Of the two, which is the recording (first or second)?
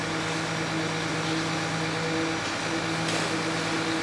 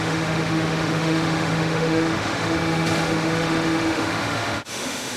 first